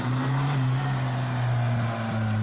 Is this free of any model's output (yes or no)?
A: yes